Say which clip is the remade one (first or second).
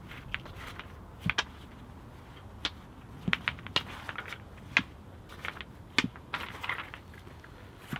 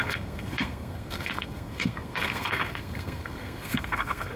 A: second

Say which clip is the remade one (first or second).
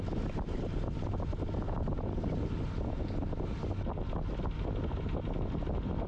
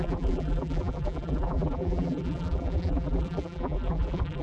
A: second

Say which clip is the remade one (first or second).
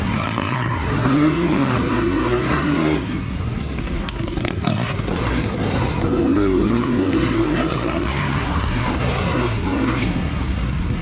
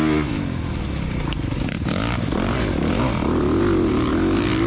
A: first